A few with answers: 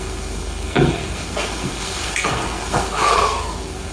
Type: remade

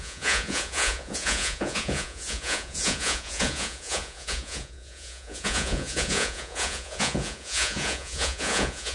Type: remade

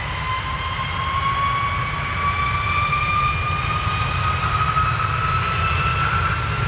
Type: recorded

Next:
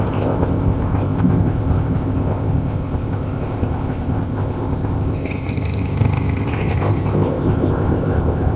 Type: remade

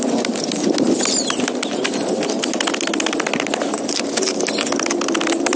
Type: recorded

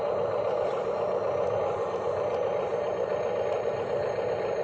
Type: recorded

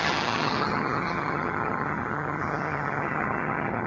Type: remade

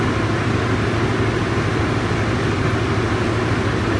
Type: recorded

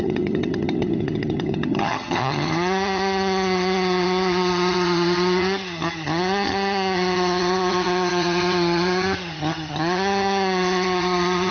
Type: remade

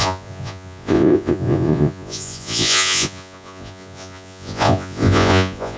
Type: remade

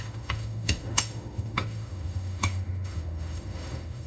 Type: remade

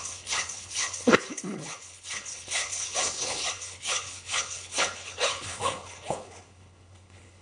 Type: remade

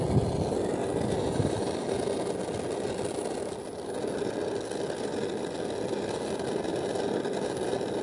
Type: recorded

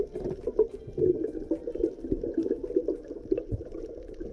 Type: recorded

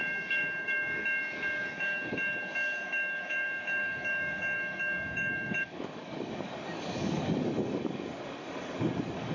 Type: remade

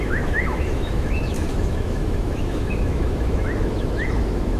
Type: remade